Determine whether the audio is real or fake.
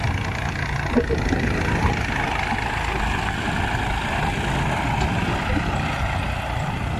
real